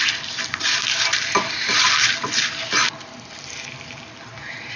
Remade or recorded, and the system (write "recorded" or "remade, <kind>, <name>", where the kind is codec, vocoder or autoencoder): recorded